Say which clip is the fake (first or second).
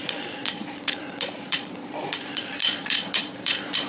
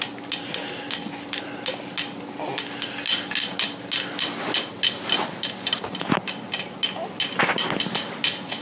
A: first